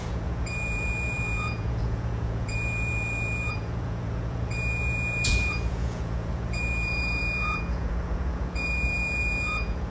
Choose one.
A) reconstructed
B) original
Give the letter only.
A